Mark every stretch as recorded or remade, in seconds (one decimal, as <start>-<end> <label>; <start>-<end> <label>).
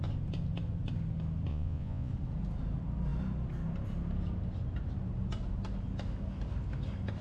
0.0-1.5 recorded; 1.5-2.1 remade; 2.1-7.2 recorded